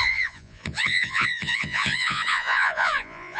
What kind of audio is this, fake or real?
fake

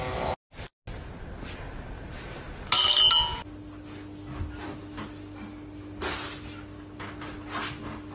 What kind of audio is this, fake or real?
real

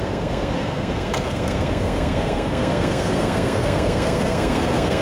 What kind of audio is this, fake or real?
fake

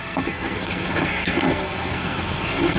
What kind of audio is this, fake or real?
fake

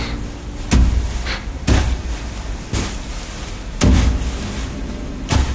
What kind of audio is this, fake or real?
real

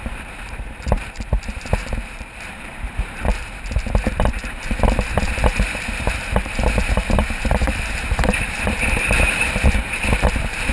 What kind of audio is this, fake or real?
fake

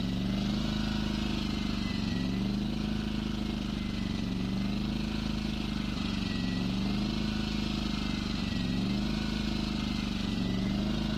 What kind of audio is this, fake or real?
real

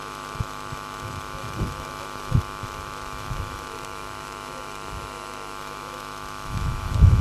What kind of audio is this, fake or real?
fake